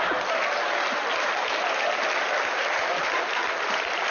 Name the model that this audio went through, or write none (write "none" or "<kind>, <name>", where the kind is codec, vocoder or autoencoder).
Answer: none